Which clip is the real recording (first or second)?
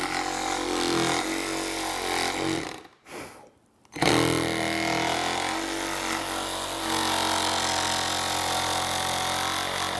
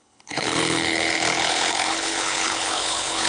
first